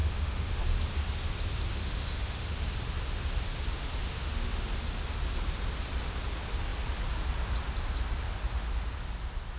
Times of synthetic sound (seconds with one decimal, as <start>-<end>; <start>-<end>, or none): 0.0-0.6; 1.8-2.5; 4.0-4.7